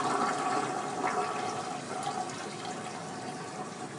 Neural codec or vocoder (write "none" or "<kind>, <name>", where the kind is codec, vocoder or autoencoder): none